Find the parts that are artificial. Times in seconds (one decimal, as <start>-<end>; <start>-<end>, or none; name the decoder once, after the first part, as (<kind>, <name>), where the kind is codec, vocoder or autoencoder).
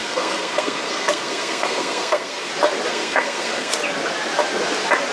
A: 0.0-2.5 (codec, SNAC); 2.9-3.7